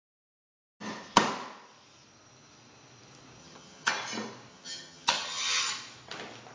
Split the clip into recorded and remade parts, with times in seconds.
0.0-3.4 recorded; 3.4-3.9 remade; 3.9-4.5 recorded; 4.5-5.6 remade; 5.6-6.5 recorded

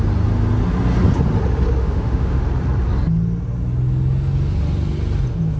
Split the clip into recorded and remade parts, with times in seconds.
0.0-1.8 recorded; 1.8-2.4 remade; 2.4-5.6 recorded

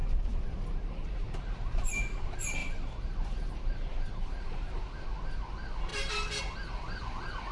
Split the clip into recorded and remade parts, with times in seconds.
0.0-1.7 remade; 1.7-2.6 recorded; 2.6-4.7 remade; 4.7-5.9 recorded; 5.9-6.4 remade; 6.4-7.5 recorded

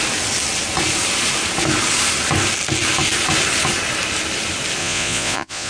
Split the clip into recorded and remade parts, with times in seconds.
0.0-4.8 recorded; 4.8-5.7 remade

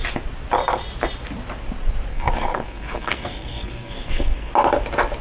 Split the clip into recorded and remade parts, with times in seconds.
0.0-2.1 recorded; 2.1-4.5 remade; 4.5-5.2 recorded